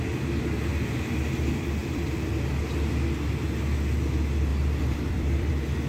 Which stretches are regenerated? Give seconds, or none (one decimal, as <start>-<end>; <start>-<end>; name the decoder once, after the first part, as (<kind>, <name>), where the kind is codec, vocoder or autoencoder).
1.8-2.6 (vocoder, BigVGAN v2); 4.5-5.5